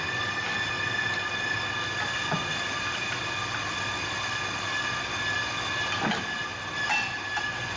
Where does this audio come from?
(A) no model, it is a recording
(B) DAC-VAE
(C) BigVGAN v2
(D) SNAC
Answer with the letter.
A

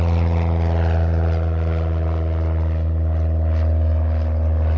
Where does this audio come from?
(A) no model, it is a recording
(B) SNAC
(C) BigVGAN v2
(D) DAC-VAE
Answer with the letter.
A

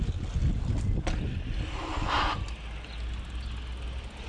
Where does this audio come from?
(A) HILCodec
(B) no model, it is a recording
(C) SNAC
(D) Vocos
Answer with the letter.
B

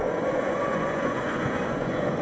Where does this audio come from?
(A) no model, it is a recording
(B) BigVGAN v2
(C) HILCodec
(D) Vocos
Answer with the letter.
D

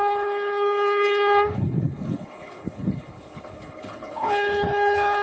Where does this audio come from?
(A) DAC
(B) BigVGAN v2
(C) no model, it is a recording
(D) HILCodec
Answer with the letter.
D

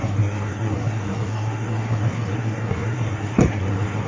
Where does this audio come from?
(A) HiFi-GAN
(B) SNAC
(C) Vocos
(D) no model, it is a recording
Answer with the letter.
B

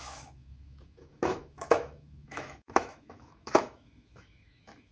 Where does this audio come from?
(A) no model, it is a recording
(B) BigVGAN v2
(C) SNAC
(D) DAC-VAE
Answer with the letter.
D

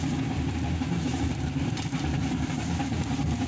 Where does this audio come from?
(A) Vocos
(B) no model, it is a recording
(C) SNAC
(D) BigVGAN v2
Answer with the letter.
D